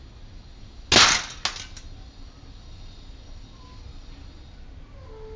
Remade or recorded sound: recorded